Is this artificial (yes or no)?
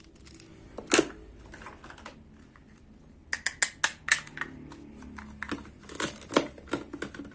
no